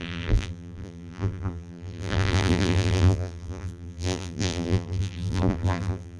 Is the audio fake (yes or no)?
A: yes